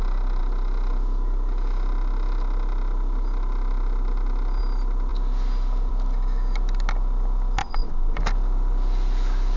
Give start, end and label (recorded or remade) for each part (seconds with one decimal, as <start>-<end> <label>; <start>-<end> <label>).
0.0-7.6 recorded; 7.6-8.2 remade; 8.2-9.6 recorded